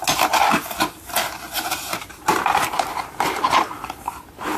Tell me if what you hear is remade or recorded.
recorded